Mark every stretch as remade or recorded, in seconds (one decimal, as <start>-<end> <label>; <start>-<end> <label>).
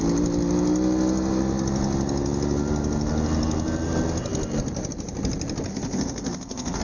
0.0-5.7 recorded; 5.7-6.8 remade